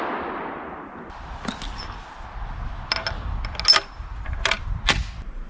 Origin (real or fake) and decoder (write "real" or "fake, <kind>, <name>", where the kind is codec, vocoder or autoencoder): real